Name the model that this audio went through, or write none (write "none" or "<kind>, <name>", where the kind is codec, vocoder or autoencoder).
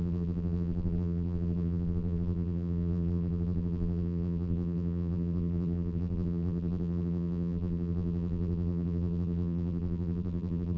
vocoder, BigVGAN v2